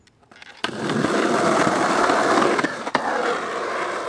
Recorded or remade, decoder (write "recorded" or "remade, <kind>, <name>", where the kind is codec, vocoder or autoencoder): recorded